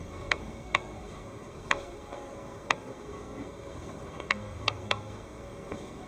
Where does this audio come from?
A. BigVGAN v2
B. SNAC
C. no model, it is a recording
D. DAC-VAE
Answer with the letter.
B